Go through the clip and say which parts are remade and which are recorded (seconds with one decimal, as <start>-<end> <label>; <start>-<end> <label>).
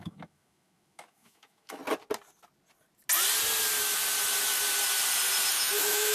0.0-1.8 remade; 1.8-5.5 recorded; 5.5-6.1 remade